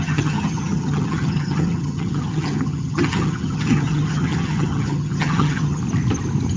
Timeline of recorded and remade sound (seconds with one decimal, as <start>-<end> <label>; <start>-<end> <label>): 0.0-5.8 remade; 5.8-6.6 recorded